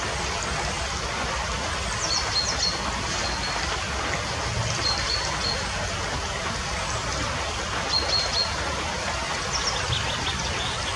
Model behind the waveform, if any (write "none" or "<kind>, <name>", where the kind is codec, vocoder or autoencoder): none